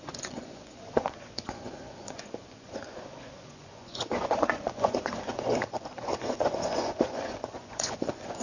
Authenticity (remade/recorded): remade